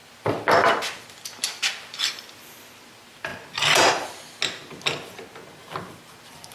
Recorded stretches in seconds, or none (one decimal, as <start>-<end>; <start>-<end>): 0.0-6.5